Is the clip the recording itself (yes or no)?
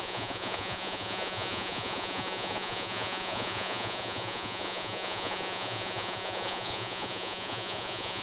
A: no